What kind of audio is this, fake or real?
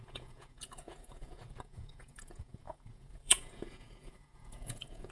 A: fake